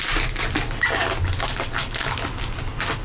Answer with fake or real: real